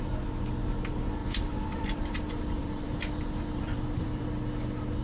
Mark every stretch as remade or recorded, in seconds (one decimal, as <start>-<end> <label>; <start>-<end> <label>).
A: 0.0-1.2 recorded; 1.2-4.2 remade; 4.2-5.0 recorded